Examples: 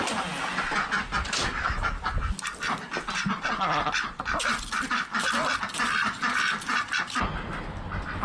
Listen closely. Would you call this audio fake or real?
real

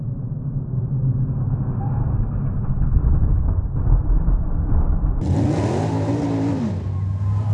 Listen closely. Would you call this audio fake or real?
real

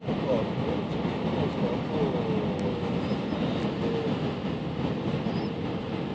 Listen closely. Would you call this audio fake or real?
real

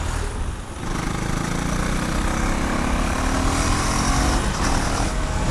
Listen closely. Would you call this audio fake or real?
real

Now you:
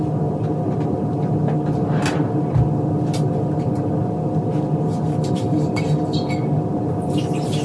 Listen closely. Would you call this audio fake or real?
real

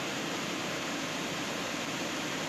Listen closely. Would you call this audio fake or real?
fake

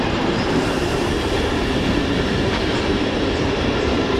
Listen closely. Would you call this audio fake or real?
fake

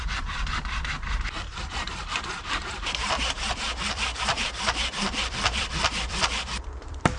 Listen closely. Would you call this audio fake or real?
fake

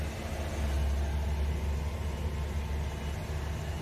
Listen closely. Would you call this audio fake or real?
real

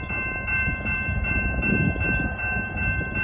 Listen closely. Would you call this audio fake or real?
fake